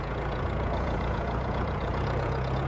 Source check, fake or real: fake